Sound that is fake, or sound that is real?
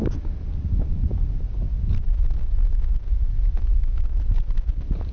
real